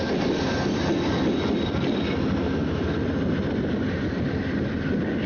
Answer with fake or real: real